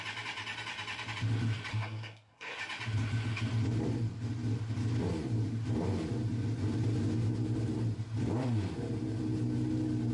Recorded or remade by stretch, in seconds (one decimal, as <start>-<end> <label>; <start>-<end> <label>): 0.0-1.7 recorded; 1.7-2.6 remade; 2.6-10.1 recorded